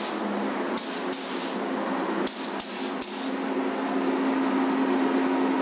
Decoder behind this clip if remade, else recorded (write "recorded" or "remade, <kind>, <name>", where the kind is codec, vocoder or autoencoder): recorded